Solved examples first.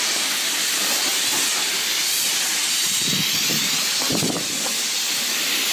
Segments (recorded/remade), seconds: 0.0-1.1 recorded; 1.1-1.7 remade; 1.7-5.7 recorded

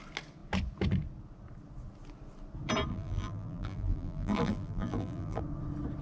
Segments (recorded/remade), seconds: 0.0-2.9 recorded; 2.9-5.4 remade; 5.4-6.0 recorded

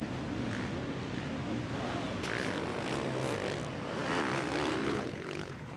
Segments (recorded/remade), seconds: 0.0-4.8 recorded; 4.8-5.8 remade

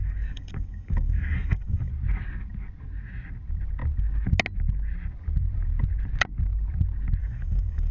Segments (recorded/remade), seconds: 0.0-1.9 remade; 1.9-7.2 recorded; 7.2-7.9 remade

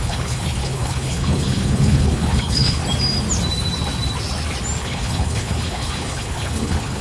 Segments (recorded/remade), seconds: 0.0-2.8 remade; 2.8-4.8 recorded; 4.8-7.0 remade

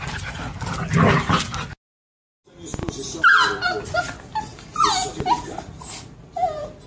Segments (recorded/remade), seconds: 0.0-6.9 recorded

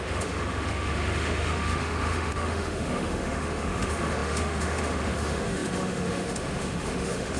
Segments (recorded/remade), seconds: 0.0-7.4 remade

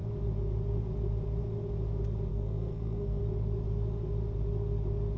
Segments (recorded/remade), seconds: 0.0-2.3 recorded; 2.3-3.2 remade; 3.2-5.2 recorded